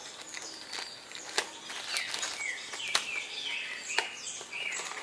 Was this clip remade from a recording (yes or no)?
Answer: no